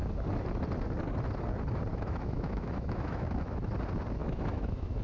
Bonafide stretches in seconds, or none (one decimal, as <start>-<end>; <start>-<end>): 0.0-1.9; 3.7-4.2